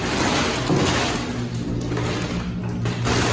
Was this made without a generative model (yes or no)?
yes